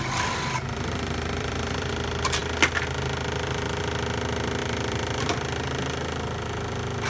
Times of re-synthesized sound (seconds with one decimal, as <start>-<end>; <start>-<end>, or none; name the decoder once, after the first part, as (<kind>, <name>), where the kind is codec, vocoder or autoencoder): 0.0-1.9 (vocoder, BigVGAN v2); 4.6-5.2

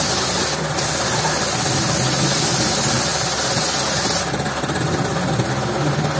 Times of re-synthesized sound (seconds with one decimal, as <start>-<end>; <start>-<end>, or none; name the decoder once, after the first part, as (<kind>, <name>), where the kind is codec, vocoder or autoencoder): none

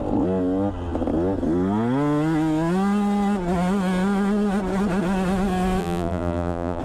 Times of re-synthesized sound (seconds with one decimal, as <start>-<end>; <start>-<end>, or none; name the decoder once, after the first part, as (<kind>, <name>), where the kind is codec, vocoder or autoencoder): 5.8-6.8 (vocoder, BigVGAN v2)

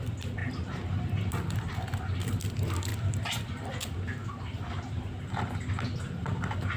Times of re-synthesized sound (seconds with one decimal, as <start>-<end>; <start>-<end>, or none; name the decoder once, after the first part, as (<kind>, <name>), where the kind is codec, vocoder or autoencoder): 2.9-3.8 (vocoder, BigVGAN v2)

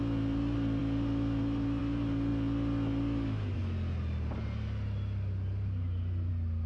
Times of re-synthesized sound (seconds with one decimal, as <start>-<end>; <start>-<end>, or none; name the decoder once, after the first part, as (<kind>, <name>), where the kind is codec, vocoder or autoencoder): none

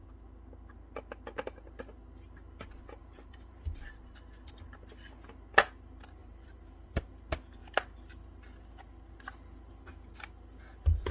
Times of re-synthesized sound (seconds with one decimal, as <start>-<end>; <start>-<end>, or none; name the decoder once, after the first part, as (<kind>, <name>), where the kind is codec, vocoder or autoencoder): 3.0-3.8 (vocoder, BigVGAN v2); 6.2-7.1

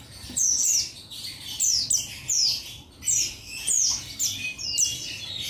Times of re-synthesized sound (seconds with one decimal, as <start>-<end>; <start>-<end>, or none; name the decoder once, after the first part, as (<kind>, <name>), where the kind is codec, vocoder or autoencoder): none